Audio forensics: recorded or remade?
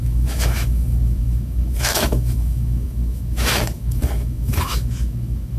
remade